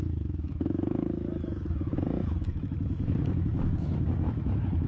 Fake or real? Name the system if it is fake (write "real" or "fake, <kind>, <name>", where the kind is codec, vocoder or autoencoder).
fake, autoencoder, DAC-VAE